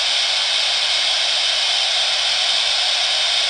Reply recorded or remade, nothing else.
recorded